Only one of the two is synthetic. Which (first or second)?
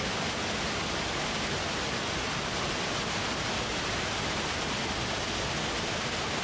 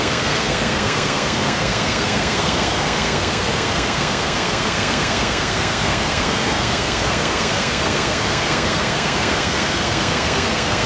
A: second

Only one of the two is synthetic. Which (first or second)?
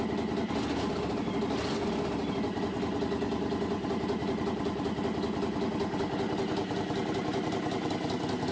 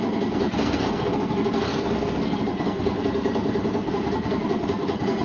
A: second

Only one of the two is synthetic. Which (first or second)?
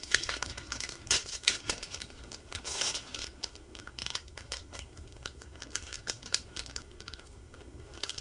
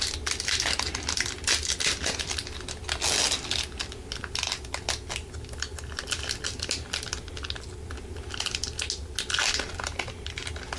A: first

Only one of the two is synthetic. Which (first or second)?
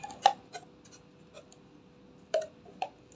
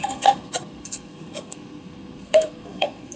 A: second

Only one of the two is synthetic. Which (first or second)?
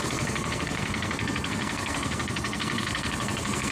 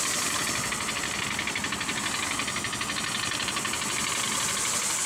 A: first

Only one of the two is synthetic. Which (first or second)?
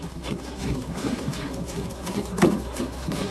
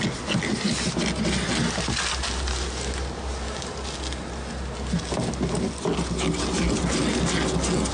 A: first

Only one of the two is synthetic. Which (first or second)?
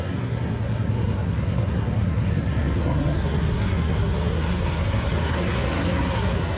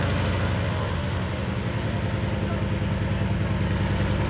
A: first